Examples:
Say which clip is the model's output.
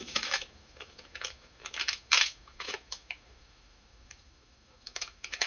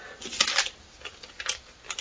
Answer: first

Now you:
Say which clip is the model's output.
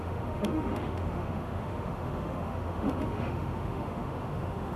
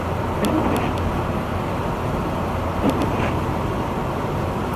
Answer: first